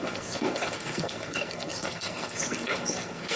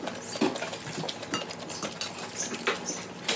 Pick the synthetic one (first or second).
first